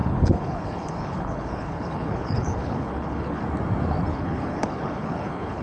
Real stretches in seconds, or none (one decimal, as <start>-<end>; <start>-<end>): 3.4-4.1